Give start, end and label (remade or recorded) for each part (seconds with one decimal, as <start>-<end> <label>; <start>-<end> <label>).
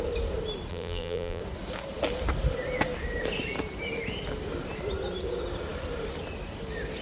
0.0-0.7 recorded; 0.7-1.4 remade; 1.4-7.0 recorded